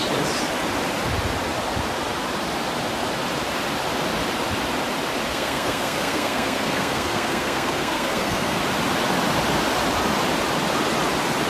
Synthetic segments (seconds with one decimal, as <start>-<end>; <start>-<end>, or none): 5.3-8.6